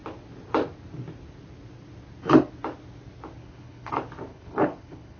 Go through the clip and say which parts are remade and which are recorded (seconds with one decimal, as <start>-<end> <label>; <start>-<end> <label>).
0.0-3.4 recorded; 3.4-3.9 remade; 3.9-4.3 recorded; 4.3-5.2 remade